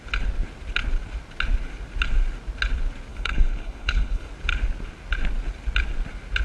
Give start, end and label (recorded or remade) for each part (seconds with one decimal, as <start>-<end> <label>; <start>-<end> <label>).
0.0-3.1 recorded; 3.1-4.3 remade; 4.3-6.4 recorded